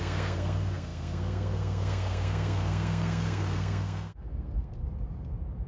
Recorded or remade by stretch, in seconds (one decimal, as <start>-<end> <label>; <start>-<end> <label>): 0.0-4.8 remade; 4.8-5.7 recorded